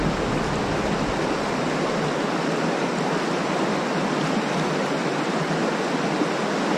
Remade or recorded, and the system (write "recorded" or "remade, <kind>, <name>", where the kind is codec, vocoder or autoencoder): recorded